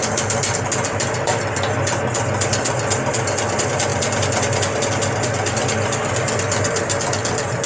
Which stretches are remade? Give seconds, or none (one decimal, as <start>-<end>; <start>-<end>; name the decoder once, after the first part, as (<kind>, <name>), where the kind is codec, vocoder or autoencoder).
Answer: none